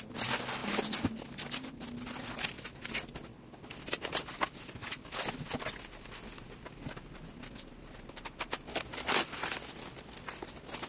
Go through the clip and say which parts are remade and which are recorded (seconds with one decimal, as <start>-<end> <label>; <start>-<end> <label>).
0.0-10.9 recorded

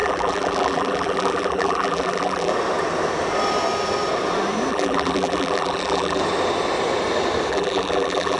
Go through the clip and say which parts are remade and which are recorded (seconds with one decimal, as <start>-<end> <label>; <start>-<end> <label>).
0.0-2.5 remade; 2.5-4.7 recorded; 4.7-6.2 remade; 6.2-7.5 recorded; 7.5-8.4 remade